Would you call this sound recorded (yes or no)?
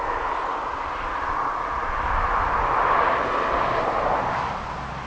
yes